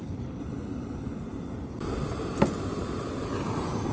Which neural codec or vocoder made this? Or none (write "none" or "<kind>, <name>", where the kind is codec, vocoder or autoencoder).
none